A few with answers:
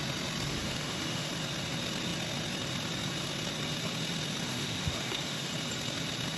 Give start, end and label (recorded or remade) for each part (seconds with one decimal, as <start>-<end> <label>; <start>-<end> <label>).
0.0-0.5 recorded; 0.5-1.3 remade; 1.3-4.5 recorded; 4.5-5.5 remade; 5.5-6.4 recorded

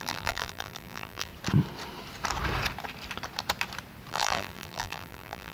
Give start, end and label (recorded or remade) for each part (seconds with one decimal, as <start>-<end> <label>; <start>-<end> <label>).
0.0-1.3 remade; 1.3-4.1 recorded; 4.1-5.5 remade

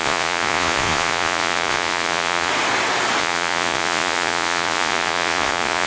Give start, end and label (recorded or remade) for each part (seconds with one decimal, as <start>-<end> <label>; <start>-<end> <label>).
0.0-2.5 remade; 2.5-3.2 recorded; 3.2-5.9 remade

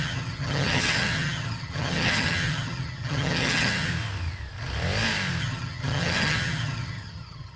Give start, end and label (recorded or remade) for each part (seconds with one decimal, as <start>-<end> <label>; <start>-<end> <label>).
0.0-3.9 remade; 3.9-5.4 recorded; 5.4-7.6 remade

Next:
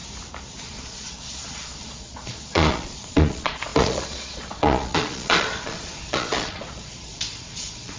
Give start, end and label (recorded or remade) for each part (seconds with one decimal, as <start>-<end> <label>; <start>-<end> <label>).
0.0-0.6 recorded; 0.6-8.0 remade

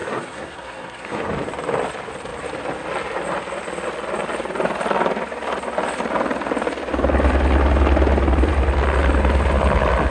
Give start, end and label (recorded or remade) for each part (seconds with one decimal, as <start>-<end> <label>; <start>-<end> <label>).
0.0-1.3 remade; 1.3-10.1 recorded